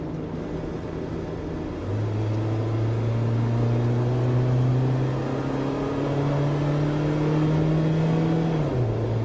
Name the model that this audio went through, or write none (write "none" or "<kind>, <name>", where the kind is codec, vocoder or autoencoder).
none